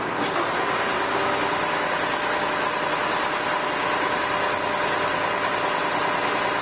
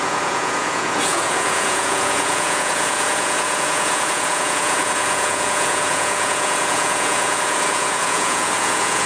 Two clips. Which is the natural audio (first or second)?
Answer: first